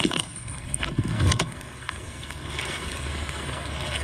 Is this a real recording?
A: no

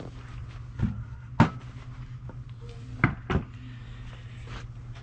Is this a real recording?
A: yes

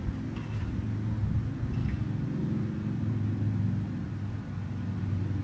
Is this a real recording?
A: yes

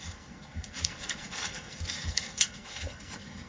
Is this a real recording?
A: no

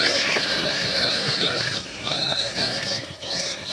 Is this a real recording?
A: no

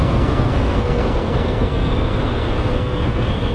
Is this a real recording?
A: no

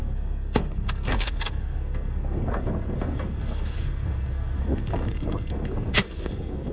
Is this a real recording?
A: no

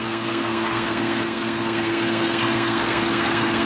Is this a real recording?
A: no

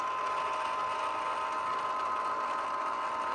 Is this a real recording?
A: yes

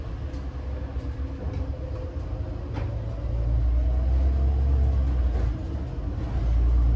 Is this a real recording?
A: yes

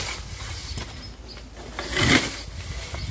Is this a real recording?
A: yes